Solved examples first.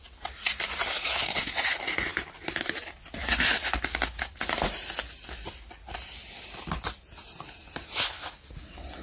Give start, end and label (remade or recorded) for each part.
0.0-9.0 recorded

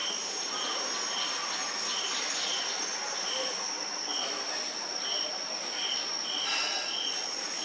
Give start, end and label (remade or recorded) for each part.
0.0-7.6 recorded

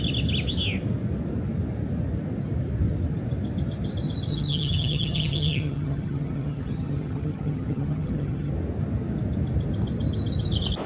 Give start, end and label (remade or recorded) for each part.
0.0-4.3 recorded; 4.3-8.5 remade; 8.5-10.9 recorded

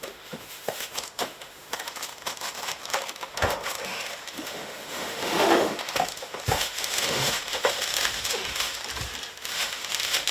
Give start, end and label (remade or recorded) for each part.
0.0-8.8 remade; 8.8-9.3 recorded; 9.3-10.3 remade

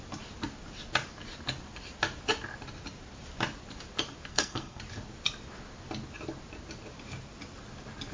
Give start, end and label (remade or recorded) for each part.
0.0-4.3 recorded; 4.3-4.8 remade; 4.8-8.1 recorded